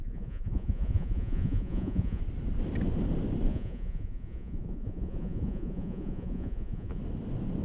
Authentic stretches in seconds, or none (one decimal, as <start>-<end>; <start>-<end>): 2.2-3.5; 7.0-7.6